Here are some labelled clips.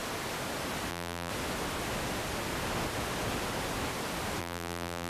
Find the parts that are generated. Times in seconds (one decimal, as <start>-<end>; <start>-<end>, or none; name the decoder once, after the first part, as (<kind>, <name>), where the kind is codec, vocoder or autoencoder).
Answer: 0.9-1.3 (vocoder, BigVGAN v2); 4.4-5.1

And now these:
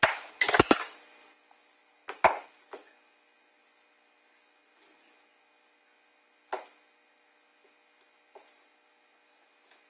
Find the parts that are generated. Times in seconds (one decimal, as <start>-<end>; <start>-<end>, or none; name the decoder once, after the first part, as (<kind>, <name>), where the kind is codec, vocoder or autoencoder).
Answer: none

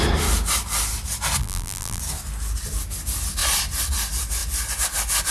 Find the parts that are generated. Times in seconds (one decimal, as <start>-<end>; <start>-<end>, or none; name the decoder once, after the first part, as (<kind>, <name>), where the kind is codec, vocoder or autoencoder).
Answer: 1.4-2.0 (vocoder, BigVGAN v2)

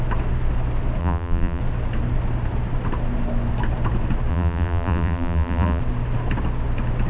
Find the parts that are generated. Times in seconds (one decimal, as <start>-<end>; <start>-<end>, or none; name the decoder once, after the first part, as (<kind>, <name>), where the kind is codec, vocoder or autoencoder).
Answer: 1.0-1.6 (vocoder, BigVGAN v2); 4.3-5.8

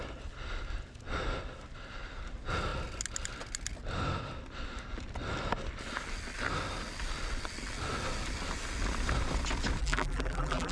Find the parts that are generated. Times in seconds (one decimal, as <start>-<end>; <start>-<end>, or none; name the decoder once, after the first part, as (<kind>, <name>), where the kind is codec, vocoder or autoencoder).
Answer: 9.8-10.7 (vocoder, BigVGAN v2)

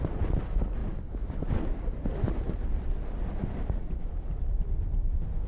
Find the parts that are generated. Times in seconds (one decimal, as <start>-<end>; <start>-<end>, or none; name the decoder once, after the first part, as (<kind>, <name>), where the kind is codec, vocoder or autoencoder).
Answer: none

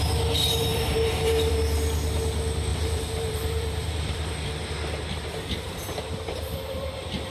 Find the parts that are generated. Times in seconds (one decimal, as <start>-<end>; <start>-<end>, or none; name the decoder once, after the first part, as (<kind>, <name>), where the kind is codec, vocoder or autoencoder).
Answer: 0.7-1.5 (vocoder, BigVGAN v2); 2.7-4.3